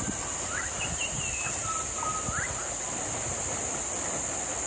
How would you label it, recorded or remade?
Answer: recorded